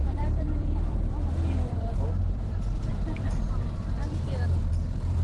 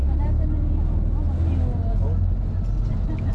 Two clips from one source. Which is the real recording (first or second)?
second